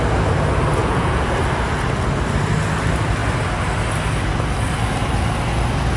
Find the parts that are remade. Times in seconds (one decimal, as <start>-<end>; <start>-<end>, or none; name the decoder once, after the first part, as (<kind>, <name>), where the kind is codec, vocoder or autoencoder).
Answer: 0.8-1.3 (vocoder, Vocos)